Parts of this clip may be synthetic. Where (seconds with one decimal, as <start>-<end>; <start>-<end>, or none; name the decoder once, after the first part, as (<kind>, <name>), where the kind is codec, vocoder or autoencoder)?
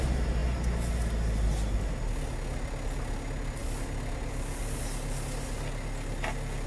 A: none